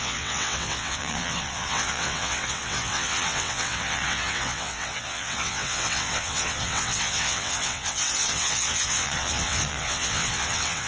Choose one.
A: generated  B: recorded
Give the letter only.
A